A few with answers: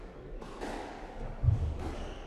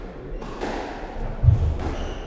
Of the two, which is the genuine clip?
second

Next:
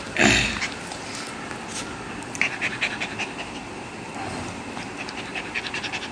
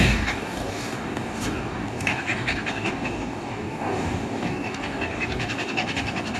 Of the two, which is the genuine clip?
first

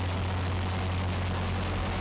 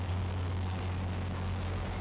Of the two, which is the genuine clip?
first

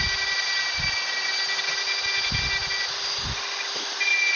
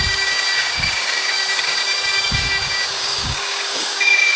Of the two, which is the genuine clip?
first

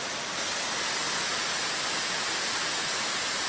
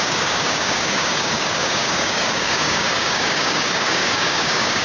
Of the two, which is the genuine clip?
first